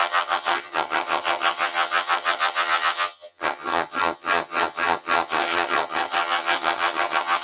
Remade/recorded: remade